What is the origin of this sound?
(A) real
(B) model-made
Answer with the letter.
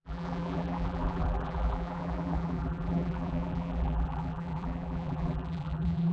B